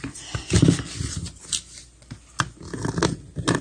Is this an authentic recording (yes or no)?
yes